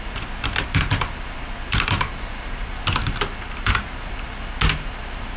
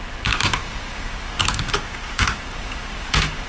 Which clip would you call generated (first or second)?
second